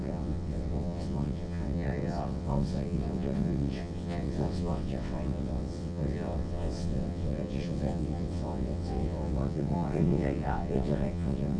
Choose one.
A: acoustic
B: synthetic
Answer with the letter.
B